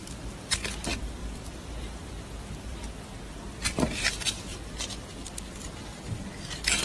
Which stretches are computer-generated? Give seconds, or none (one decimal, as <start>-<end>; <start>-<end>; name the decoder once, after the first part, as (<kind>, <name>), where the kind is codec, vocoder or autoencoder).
1.2-2.9 (vocoder, BigVGAN v2)